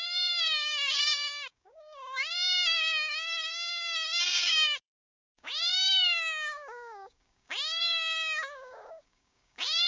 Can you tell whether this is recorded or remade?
remade